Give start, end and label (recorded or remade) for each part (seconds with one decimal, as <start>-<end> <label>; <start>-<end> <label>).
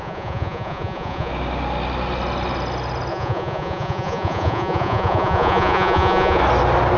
0.0-1.3 remade; 1.3-3.1 recorded; 3.1-6.4 remade; 6.4-7.0 recorded